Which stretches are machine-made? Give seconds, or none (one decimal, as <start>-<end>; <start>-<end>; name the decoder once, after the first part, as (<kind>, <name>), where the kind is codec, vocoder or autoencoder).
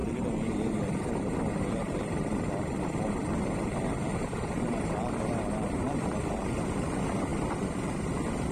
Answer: 0.0-3.1 (vocoder, BigVGAN v2); 4.1-4.7